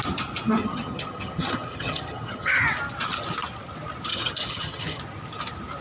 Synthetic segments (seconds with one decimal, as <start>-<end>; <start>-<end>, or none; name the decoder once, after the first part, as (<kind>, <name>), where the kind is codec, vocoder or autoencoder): 0.6-2.6 (vocoder, HiFi-GAN); 4.1-5.0